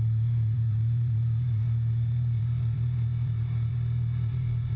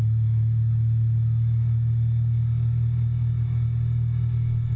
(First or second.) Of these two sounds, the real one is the second